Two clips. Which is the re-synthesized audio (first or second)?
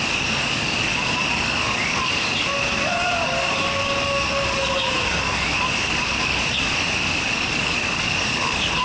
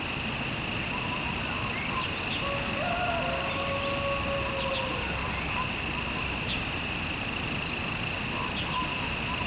first